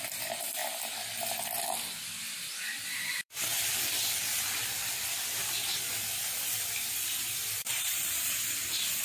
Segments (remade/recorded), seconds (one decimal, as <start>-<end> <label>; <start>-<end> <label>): 0.0-0.6 remade; 0.6-1.2 recorded; 1.2-9.0 remade